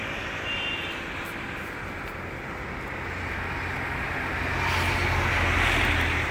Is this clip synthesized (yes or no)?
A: no